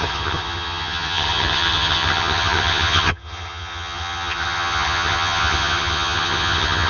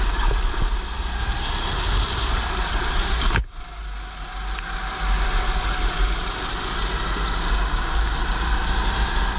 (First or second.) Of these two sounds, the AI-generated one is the first